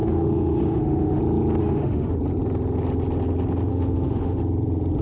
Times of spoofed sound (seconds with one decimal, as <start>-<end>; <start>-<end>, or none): 0.0-1.2; 1.6-2.2; 3.7-4.4

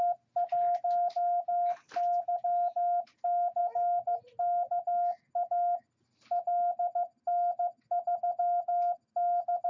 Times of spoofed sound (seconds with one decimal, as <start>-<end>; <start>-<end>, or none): none

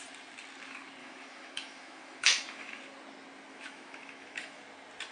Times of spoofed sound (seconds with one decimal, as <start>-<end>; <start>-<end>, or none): 1.0-2.8; 3.5-4.6

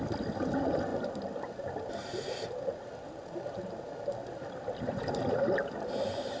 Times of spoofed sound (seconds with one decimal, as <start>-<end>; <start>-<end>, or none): 0.0-0.9; 1.9-3.2; 5.1-6.4

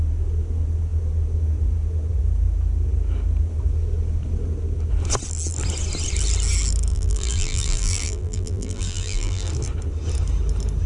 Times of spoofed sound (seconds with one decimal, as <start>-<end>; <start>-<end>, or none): 6.9-9.5

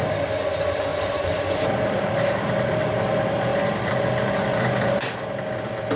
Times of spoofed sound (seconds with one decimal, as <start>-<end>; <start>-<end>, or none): 0.9-2.4

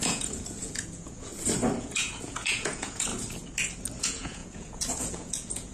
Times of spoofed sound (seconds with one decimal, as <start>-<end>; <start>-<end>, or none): 0.0-1.3; 1.8-3.1; 4.0-5.7